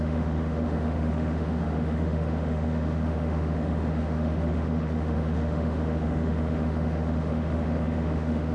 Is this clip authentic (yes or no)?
no